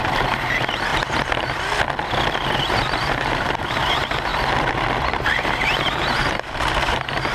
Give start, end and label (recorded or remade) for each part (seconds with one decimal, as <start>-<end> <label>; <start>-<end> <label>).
0.0-0.9 remade; 0.9-2.6 recorded; 2.6-4.3 remade; 4.3-5.0 recorded; 5.0-7.3 remade

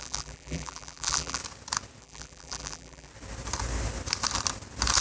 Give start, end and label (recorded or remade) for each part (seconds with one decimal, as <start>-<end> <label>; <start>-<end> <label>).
0.0-1.4 remade; 1.4-2.0 recorded; 2.0-3.1 remade; 3.1-5.0 recorded

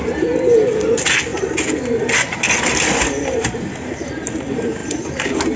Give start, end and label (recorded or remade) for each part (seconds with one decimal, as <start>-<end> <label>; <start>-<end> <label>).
0.0-5.6 recorded

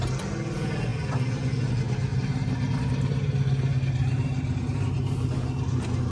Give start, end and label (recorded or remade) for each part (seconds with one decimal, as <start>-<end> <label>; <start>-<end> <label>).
0.0-2.1 recorded; 2.1-6.1 remade